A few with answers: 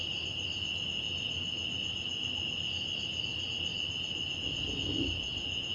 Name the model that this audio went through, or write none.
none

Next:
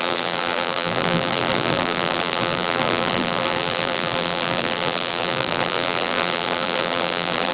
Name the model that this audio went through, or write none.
vocoder, BigVGAN v2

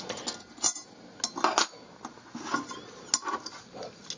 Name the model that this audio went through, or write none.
none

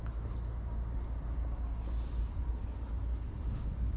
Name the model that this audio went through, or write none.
none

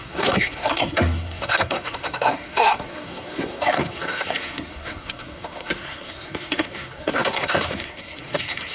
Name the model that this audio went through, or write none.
codec, SNAC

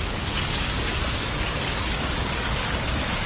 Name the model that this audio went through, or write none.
codec, DAC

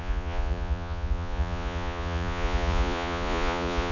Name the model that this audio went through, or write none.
vocoder, Vocos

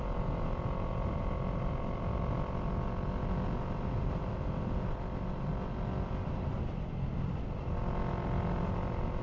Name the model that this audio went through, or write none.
none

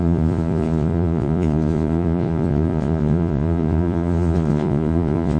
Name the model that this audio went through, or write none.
vocoder, Vocos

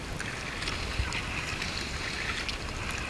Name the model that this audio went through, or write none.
none